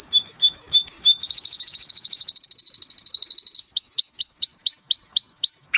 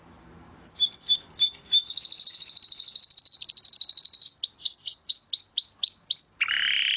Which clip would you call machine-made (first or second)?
first